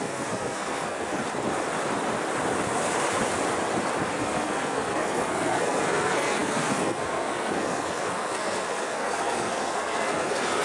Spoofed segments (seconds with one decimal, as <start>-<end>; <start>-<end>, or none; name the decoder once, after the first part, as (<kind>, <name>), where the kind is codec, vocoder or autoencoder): 0.0-1.2 (codec, SNAC); 4.1-10.6